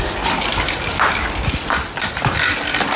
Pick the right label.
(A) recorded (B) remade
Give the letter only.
A